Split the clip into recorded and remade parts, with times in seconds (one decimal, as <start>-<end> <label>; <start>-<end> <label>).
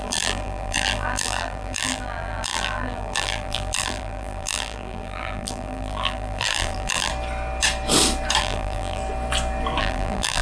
0.0-7.1 remade; 7.1-8.4 recorded; 8.4-9.0 remade; 9.0-9.8 recorded; 9.8-10.4 remade